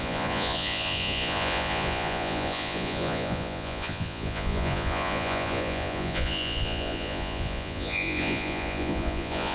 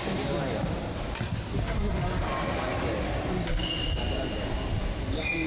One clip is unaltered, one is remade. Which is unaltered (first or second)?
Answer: second